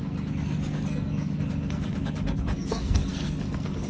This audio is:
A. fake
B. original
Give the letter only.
A